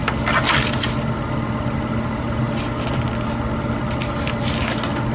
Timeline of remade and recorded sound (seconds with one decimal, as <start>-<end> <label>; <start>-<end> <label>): 0.0-5.1 recorded